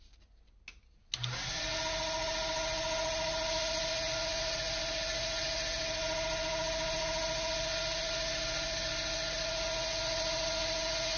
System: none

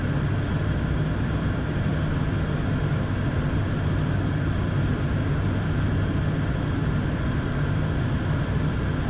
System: none